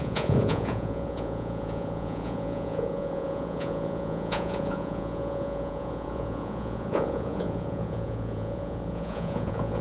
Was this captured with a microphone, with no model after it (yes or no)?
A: no